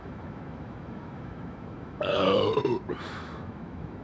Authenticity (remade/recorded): remade